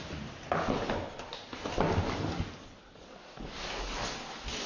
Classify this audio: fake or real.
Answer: real